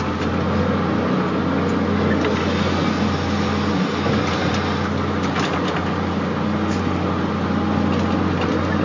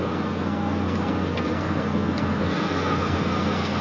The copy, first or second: second